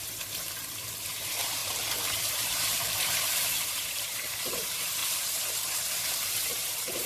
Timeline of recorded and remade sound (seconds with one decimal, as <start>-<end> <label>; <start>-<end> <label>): 0.0-1.6 remade; 1.6-2.3 recorded; 2.3-5.0 remade; 5.0-5.7 recorded; 5.7-7.1 remade